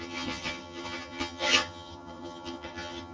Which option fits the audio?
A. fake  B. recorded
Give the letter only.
A